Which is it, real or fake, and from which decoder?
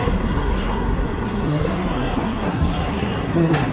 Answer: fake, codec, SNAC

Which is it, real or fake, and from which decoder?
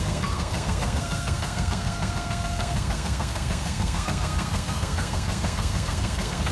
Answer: fake, codec, SNAC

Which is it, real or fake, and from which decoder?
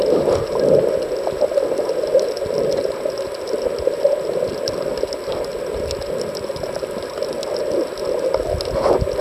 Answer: real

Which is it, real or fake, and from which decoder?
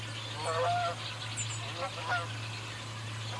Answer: real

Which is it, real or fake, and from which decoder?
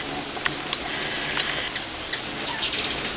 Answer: real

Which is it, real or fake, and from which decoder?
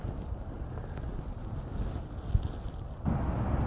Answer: real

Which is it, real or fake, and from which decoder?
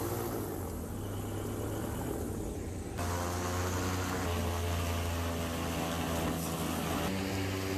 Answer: real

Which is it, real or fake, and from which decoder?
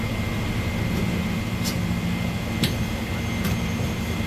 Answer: fake, vocoder, BigVGAN v2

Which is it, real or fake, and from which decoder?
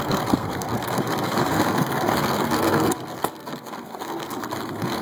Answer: fake, codec, SNAC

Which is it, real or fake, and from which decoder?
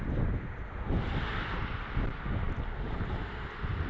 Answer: real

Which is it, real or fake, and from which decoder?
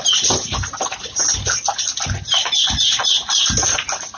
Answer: real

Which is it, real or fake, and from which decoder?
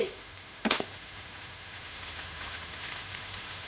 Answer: fake, autoencoder, DAC-VAE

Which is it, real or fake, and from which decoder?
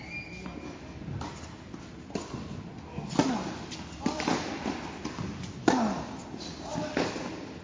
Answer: real